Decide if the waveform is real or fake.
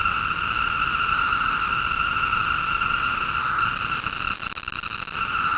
real